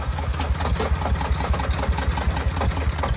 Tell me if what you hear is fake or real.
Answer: real